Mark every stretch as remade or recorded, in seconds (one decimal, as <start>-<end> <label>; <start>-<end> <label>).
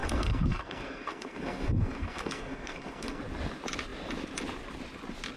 0.0-3.2 remade; 3.2-5.4 recorded